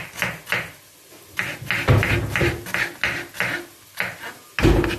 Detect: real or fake real